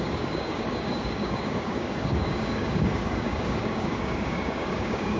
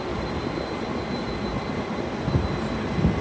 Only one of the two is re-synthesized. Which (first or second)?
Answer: first